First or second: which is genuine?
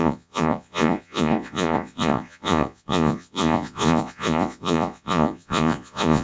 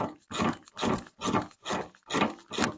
second